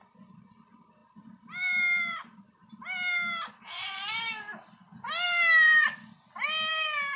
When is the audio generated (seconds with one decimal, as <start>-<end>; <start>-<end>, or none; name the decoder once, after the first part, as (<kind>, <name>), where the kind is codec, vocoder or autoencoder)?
none